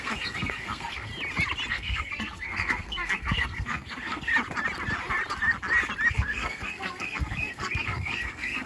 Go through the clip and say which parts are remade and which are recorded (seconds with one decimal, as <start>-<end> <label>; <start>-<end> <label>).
0.0-1.1 remade; 1.1-1.7 recorded; 1.7-4.3 remade; 4.3-6.1 recorded; 6.1-8.7 remade